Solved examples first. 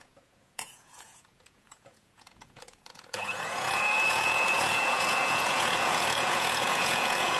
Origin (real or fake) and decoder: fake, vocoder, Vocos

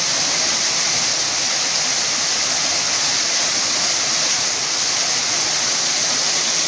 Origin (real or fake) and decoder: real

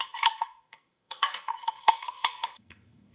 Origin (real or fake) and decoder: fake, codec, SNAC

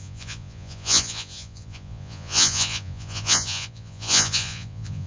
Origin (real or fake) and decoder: fake, vocoder, Vocos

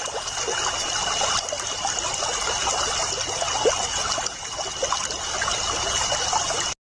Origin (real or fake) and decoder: real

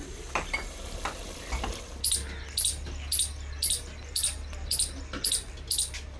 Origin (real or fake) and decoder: real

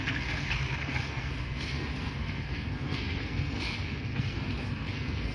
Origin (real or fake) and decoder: fake, codec, SNAC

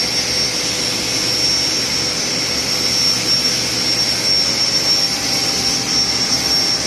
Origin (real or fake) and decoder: real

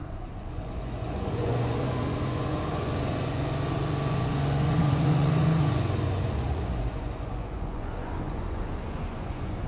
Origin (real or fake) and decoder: fake, vocoder, Vocos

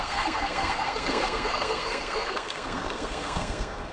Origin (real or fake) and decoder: fake, codec, SNAC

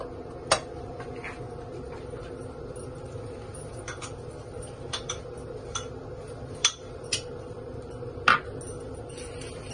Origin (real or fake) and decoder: real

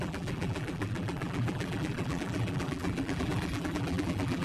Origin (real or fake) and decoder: fake, vocoder, BigVGAN v2